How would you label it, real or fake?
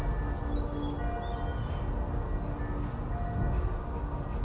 real